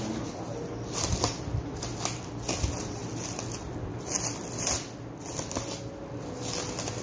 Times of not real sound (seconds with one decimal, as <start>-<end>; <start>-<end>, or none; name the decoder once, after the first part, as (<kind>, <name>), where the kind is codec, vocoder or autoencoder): none